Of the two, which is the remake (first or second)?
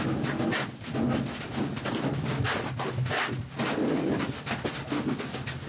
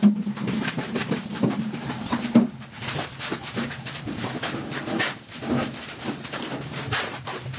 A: second